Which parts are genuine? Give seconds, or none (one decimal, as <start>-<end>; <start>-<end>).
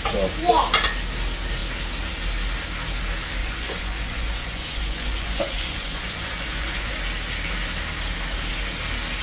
0.0-3.4; 6.9-9.2